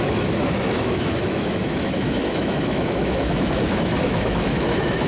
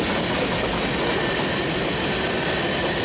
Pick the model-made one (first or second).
first